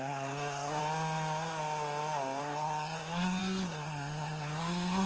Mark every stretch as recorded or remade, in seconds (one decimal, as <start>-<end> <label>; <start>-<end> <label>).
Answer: 0.0-0.8 remade; 0.8-2.4 recorded; 2.4-5.1 remade